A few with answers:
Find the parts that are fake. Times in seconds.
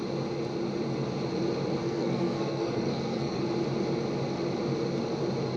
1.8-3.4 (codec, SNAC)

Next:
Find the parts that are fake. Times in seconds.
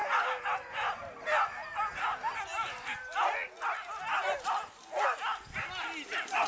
none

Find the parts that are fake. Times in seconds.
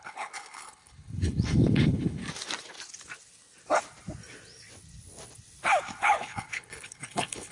0.0-2.2 (codec, HILCodec); 6.0-7.5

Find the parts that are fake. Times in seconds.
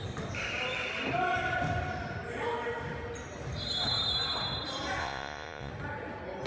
5.0-5.7 (vocoder, Vocos)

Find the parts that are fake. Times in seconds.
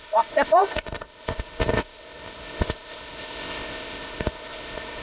0.0-5.0 (codec, ZipCodec)